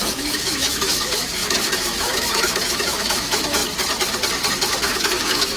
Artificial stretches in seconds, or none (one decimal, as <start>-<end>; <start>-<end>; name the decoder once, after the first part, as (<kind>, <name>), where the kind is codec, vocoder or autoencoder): 0.0-3.6 (autoencoder, DAC-VAE); 4.5-5.6